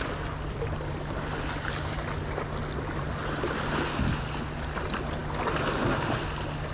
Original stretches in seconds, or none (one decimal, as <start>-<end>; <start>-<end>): 0.0-6.7